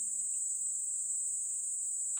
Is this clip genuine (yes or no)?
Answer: yes